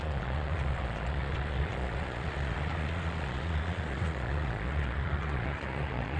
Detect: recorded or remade remade